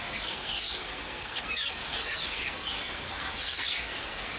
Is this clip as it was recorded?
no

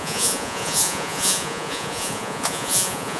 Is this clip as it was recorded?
no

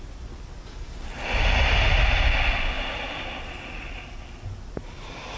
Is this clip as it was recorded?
yes